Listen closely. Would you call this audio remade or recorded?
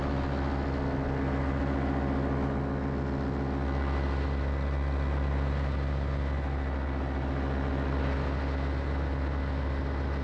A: recorded